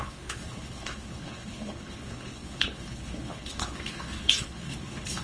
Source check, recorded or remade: remade